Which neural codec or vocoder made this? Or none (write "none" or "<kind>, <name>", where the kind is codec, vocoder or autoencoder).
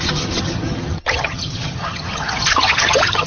vocoder, HiFi-GAN